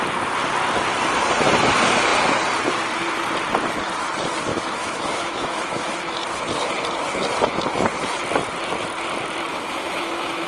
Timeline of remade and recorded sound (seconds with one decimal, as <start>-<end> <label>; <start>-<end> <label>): 0.0-4.5 recorded; 4.5-5.9 remade; 5.9-9.5 recorded; 9.5-10.5 remade